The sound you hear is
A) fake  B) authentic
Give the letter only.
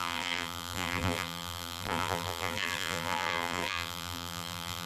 A